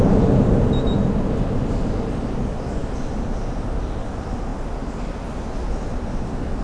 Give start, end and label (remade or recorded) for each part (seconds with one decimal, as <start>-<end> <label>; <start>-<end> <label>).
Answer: 0.0-6.6 recorded